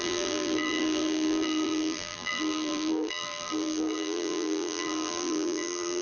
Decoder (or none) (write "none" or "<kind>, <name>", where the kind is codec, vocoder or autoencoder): vocoder, BigVGAN v2